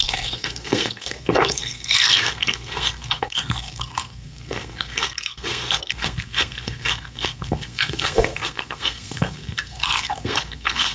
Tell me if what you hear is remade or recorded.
remade